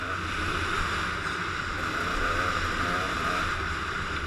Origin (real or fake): real